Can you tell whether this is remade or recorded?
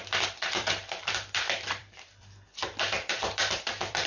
remade